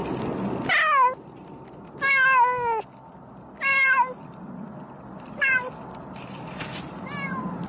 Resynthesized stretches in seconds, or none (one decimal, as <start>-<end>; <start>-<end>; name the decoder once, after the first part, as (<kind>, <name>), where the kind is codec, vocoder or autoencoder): 3.3-7.7 (vocoder, BigVGAN v2)